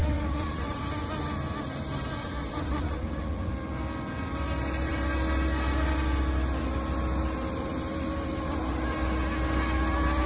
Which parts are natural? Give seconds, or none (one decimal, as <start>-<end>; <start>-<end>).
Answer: 0.8-2.2; 3.5-10.3